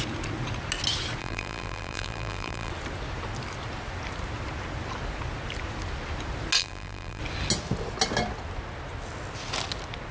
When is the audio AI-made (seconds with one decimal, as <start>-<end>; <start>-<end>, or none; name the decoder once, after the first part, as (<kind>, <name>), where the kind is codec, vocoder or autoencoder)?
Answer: 1.2-2.7 (vocoder, BigVGAN v2); 6.6-7.2